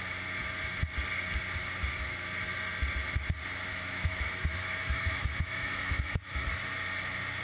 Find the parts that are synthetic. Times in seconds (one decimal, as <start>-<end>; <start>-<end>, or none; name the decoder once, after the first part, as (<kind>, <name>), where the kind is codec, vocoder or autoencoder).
3.7-6.5 (autoencoder, DAC-VAE)